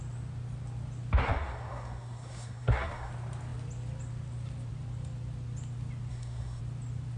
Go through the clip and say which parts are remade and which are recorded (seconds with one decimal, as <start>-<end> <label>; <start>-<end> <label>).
0.0-1.2 recorded; 1.2-3.1 remade; 3.1-6.1 recorded; 6.1-6.6 remade; 6.6-7.2 recorded